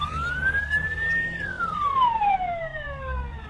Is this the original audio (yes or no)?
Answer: yes